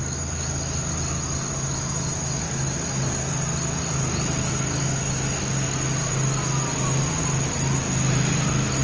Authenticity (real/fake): real